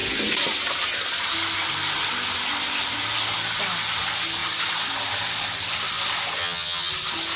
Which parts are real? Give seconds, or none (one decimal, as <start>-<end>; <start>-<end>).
0.0-6.4; 6.9-7.4